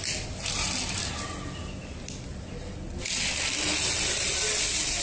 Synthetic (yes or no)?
no